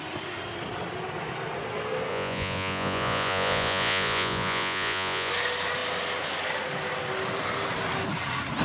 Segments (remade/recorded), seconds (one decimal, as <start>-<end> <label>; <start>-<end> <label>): 0.0-2.1 recorded; 2.1-5.3 remade; 5.3-8.6 recorded